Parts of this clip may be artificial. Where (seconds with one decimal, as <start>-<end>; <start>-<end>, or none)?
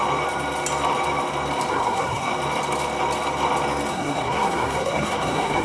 1.7-2.3; 3.9-5.6